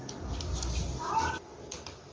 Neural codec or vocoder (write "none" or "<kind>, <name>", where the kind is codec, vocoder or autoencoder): none